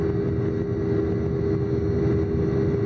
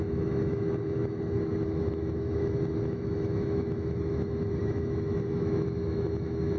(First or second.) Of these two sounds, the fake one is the second